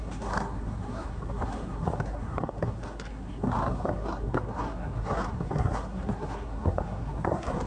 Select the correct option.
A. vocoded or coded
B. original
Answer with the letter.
A